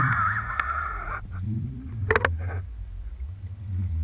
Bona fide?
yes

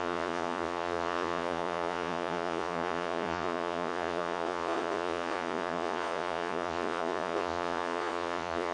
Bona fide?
no